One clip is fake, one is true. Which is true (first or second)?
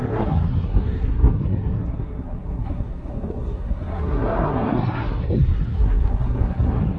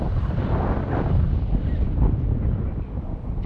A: second